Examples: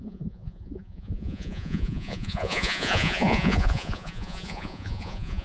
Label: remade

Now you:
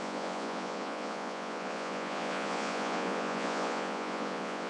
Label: remade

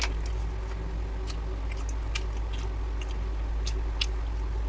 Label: recorded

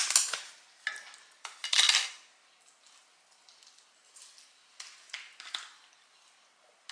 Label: recorded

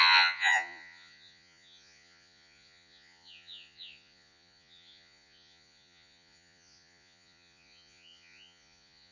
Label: remade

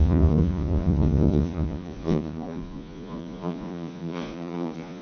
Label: remade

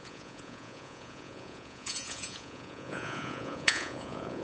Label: remade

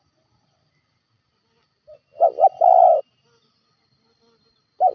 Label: recorded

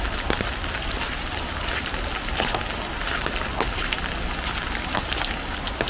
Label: recorded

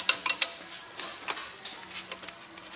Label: recorded